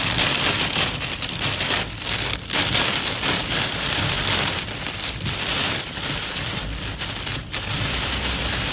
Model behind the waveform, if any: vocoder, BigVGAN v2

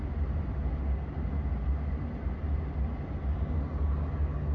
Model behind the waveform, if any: none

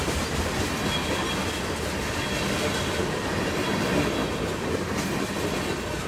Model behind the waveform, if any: none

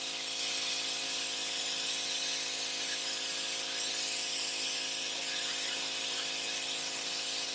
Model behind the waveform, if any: vocoder, BigVGAN v2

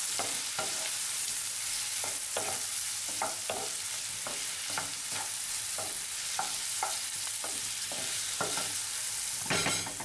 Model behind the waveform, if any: vocoder, BigVGAN v2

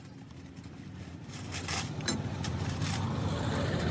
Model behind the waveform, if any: vocoder, BigVGAN v2